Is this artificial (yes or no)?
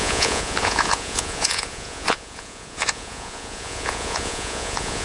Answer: yes